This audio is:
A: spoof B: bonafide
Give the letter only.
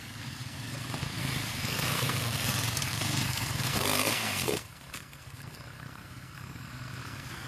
A